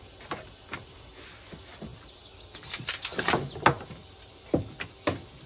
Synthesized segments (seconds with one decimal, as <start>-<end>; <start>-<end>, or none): none